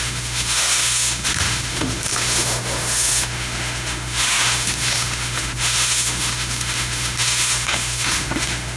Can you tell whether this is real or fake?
fake